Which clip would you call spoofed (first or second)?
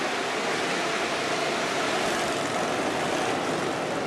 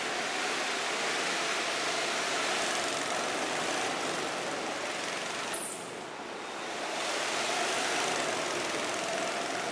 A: second